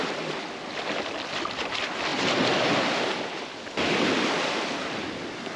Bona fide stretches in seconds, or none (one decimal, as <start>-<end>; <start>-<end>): 0.0-5.6